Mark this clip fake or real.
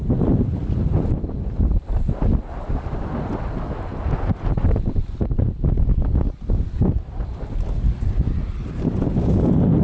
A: real